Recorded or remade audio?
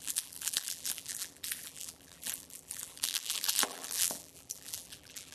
remade